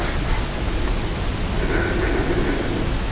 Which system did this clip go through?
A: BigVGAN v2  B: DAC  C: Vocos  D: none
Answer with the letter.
D